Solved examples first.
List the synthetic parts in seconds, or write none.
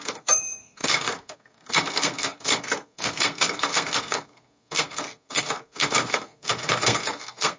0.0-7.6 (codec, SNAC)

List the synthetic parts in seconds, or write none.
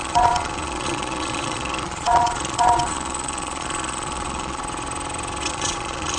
0.0-4.6 (vocoder, Vocos); 5.5-6.2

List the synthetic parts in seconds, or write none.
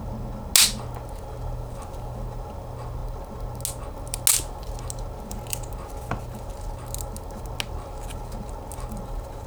none